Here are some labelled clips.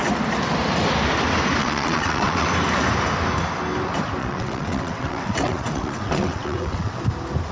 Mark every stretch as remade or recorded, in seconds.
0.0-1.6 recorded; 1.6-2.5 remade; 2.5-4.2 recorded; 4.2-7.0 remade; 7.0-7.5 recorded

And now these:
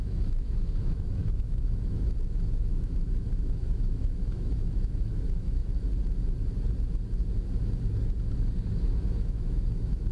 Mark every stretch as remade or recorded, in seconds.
0.0-5.6 remade; 5.6-8.9 recorded; 8.9-10.1 remade

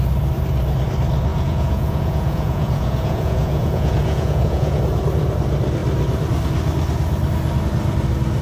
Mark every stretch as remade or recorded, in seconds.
0.0-1.3 recorded; 1.3-4.8 remade; 4.8-8.4 recorded

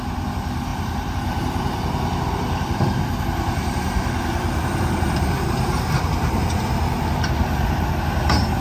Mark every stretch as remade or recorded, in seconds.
0.0-0.7 recorded; 0.7-5.9 remade; 5.9-8.6 recorded

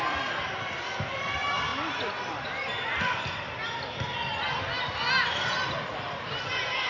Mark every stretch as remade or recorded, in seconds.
0.0-6.9 recorded

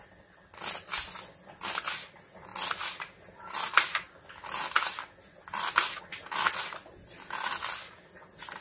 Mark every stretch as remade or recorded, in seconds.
0.0-8.6 recorded